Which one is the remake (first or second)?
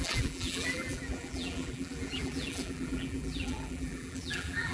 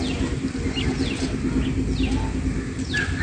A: first